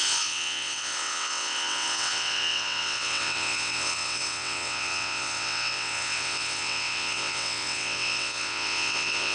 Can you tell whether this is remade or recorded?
remade